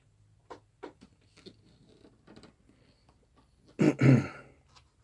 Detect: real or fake real